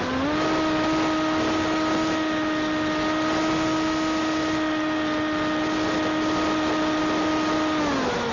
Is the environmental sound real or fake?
real